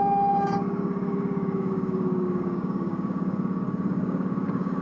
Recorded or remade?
remade